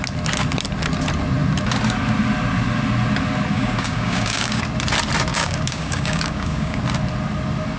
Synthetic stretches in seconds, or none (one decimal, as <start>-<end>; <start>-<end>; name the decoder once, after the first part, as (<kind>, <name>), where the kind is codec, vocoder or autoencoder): 3.5-4.6 (codec, DAC); 5.3-6.8

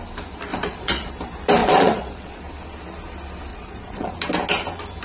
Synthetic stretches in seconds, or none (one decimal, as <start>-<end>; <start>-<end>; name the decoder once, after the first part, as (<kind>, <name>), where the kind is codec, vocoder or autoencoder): 0.5-1.1 (vocoder, Vocos); 1.6-2.4; 3.5-4.1